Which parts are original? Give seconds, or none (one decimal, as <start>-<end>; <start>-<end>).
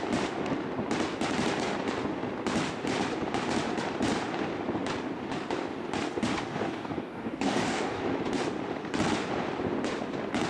0.0-6.5; 8.0-10.5